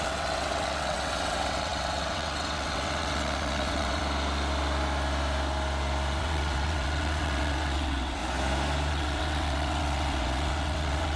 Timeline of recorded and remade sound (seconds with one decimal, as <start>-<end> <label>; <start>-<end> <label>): 0.0-4.0 remade; 4.0-6.2 recorded; 6.2-8.2 remade; 8.2-8.9 recorded; 8.9-11.2 remade